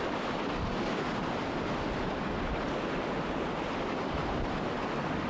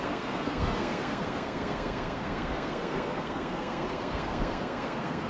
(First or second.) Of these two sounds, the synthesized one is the second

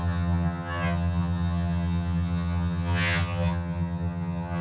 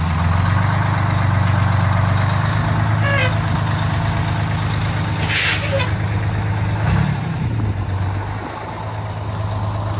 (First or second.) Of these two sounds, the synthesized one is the first